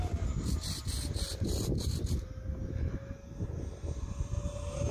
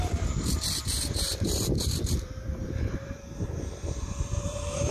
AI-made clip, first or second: second